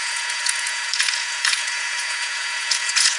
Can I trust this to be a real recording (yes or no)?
no